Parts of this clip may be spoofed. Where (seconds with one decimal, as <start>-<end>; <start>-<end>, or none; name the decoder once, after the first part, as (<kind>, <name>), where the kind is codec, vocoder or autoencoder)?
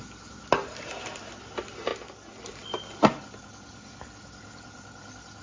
none